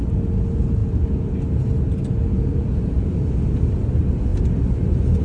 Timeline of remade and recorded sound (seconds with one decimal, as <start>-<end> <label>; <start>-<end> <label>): 0.0-5.2 recorded